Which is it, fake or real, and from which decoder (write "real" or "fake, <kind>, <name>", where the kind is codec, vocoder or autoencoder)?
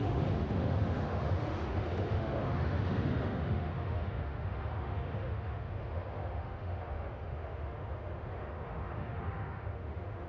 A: fake, autoencoder, DAC-VAE